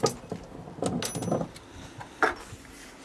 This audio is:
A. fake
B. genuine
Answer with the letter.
B